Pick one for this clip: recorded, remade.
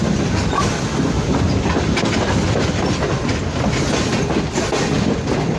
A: recorded